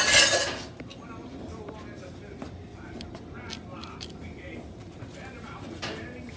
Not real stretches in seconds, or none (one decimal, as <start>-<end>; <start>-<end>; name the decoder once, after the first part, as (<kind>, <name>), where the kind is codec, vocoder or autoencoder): none